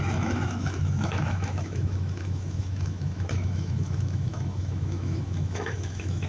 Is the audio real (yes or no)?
no